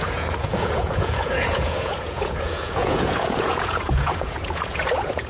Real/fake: fake